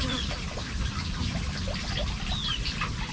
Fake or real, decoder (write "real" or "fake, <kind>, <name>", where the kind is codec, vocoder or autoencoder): real